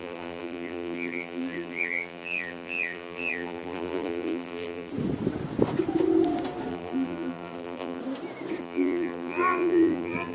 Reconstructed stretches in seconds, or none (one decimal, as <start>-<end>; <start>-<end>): 0.0-4.9; 6.7-8.0; 8.6-10.3